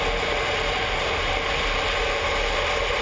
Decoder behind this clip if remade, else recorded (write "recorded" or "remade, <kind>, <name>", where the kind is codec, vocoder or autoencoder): recorded